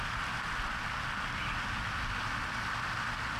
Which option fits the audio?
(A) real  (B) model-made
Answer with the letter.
A